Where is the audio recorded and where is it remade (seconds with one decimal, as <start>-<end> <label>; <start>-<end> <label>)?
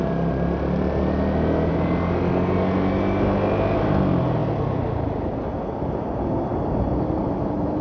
0.0-7.8 recorded